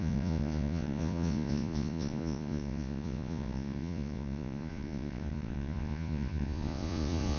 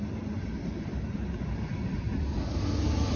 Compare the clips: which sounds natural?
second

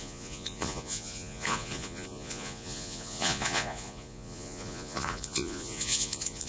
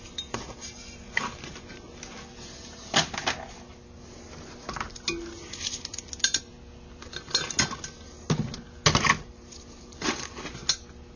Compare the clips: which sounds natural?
second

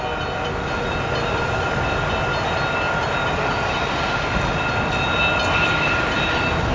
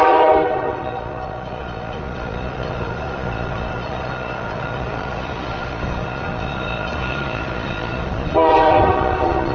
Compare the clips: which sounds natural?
first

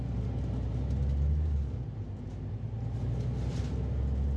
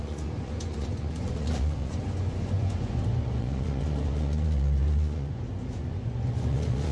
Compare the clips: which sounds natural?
first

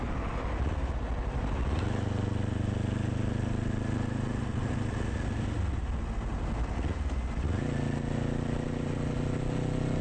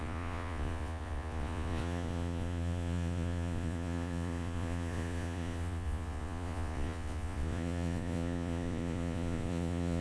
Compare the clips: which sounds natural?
first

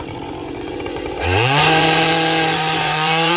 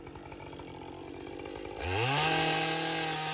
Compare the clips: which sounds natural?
second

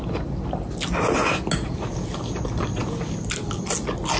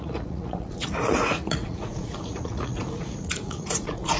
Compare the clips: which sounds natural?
first